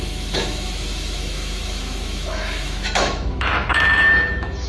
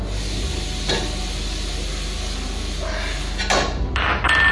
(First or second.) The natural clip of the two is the second